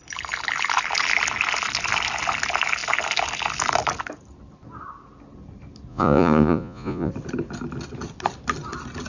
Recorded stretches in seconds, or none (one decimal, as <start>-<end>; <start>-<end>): 0.0-5.9; 7.1-9.1